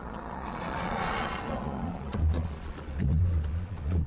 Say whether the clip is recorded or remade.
remade